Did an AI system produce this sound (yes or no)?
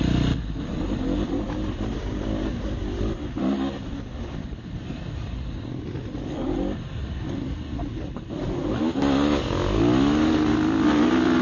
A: no